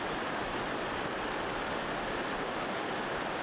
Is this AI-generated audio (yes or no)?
no